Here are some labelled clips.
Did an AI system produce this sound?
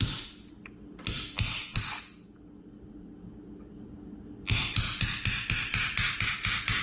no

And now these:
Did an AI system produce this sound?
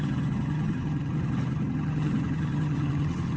yes